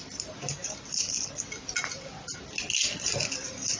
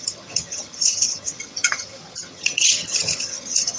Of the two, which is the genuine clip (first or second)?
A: first